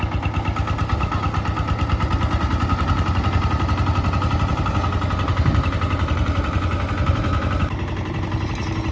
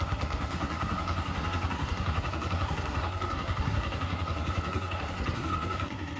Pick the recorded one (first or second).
first